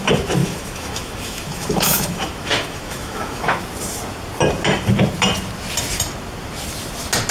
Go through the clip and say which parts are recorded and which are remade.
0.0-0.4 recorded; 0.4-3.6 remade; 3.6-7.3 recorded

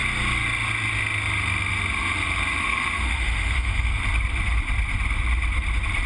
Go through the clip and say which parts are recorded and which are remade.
0.0-2.6 recorded; 2.6-4.0 remade; 4.0-6.1 recorded

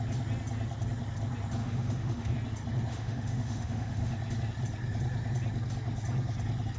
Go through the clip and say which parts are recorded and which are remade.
0.0-1.6 recorded; 1.6-2.3 remade; 2.3-2.9 recorded; 2.9-4.2 remade; 4.2-6.8 recorded

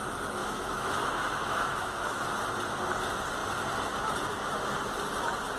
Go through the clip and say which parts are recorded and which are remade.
0.0-0.4 recorded; 0.4-2.2 remade; 2.2-5.6 recorded

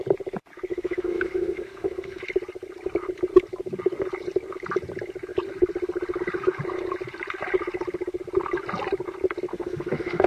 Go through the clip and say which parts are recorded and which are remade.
0.0-0.7 recorded; 0.7-2.2 remade; 2.2-9.5 recorded; 9.5-10.3 remade

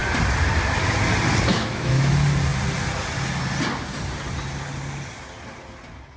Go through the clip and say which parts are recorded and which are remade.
0.0-1.5 recorded; 1.5-2.1 remade; 2.1-6.2 recorded

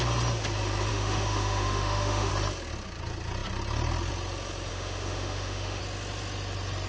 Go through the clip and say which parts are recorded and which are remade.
0.0-0.9 recorded; 0.9-2.3 remade; 2.3-4.7 recorded; 4.7-5.8 remade; 5.8-6.9 recorded